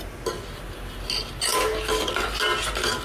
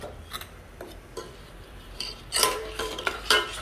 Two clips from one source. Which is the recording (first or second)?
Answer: first